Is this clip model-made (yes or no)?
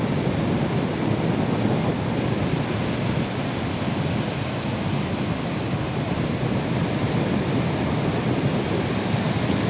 no